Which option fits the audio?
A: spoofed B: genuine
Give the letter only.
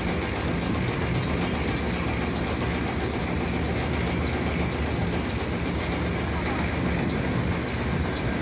B